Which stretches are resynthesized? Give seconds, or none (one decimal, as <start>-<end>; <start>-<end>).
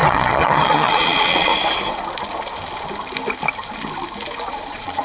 0.0-1.5; 4.5-5.0